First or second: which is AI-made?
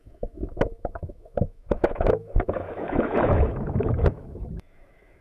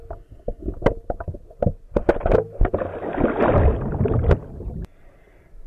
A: first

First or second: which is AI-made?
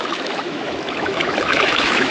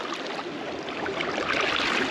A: first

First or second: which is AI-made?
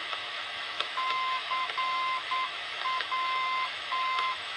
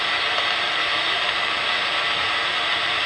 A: first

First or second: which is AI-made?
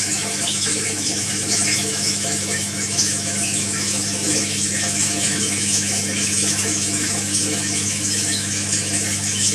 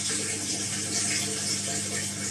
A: first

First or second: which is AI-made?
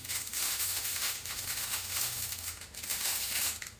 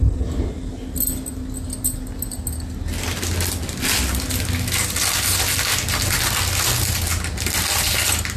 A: first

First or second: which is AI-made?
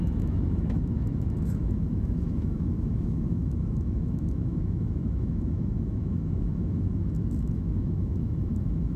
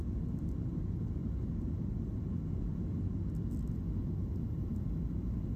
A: first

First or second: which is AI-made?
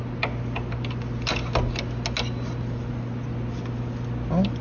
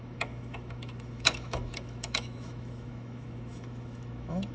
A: second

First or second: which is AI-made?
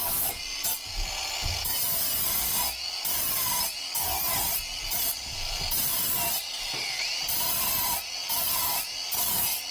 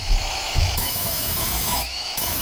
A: second